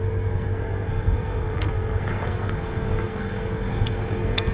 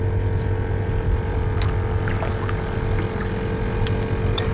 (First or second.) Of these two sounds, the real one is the second